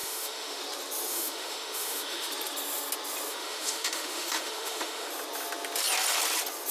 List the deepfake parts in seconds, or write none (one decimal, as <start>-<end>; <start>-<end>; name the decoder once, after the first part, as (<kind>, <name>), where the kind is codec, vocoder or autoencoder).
0.0-0.6 (autoencoder, DAC-VAE); 1.1-2.3; 3.3-5.1